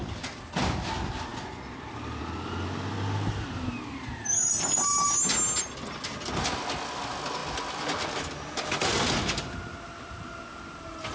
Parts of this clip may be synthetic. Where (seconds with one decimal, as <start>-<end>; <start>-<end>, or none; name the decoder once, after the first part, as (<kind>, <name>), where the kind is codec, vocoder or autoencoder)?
none